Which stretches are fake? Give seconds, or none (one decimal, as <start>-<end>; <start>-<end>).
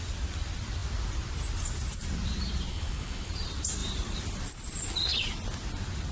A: 2.7-3.3